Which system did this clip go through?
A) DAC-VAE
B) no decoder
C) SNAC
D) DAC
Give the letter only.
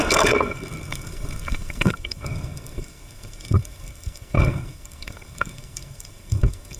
C